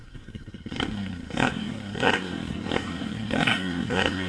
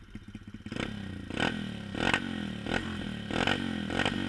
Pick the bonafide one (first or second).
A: second